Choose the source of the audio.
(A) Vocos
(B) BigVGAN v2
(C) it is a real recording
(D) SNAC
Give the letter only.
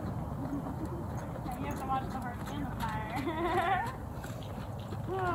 C